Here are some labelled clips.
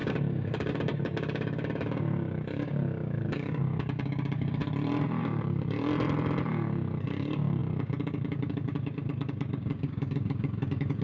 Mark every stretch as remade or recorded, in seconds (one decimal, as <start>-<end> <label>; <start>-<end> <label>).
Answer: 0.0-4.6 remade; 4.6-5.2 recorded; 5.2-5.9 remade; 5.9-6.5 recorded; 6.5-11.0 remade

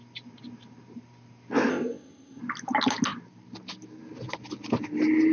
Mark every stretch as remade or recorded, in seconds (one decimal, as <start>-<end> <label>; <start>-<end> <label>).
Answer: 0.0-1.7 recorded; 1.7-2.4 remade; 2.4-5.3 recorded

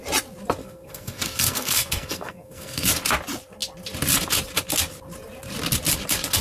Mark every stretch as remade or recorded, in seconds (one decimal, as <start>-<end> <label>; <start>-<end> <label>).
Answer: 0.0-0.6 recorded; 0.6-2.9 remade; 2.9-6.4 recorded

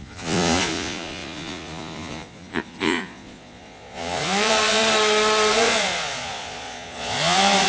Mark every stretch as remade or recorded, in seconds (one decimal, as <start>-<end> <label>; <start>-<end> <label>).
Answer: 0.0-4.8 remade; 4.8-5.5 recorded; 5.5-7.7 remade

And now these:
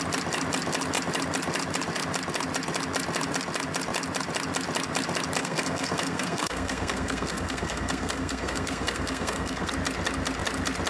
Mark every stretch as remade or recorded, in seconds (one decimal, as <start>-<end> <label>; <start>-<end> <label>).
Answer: 0.0-5.4 recorded; 5.4-9.7 remade; 9.7-10.9 recorded